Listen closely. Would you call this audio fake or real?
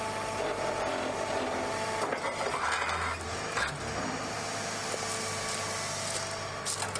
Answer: real